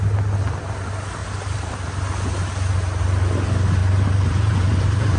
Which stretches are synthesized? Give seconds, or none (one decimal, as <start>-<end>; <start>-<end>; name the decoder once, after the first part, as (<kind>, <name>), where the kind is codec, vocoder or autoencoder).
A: 1.2-1.9 (vocoder, BigVGAN v2); 3.8-5.2